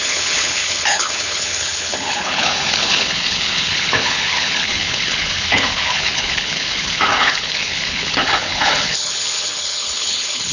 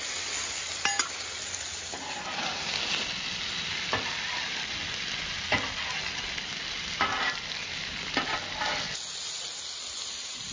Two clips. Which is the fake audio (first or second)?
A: first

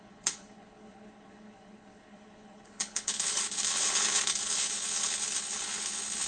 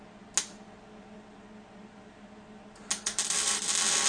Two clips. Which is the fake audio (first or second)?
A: first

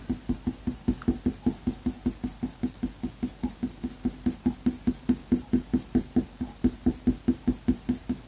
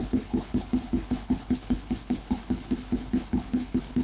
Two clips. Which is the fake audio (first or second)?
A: second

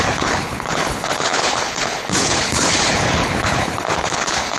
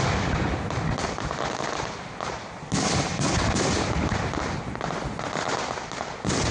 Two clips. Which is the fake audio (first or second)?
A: first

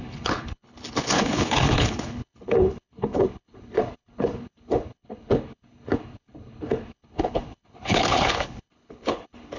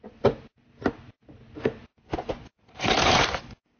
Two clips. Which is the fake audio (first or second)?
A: first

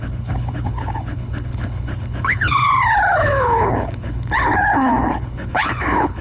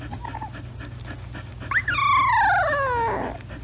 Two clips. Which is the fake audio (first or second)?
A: first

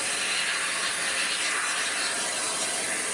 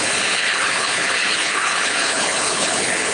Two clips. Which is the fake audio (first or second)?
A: second